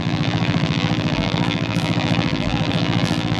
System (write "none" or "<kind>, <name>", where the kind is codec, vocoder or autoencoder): vocoder, BigVGAN v2